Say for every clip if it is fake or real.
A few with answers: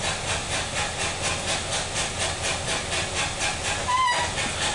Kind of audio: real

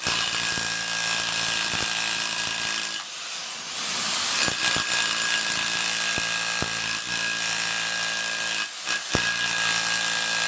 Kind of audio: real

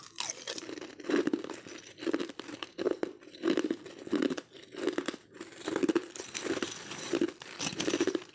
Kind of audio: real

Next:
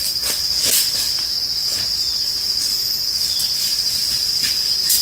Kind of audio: real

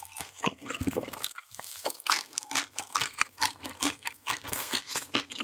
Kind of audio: fake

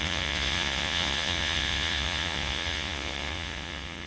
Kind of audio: fake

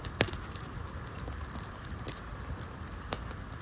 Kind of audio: real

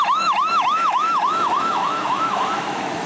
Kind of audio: fake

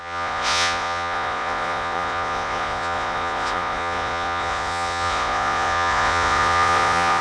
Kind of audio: fake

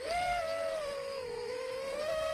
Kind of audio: fake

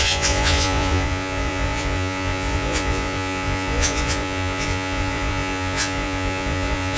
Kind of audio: fake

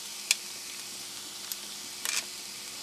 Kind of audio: real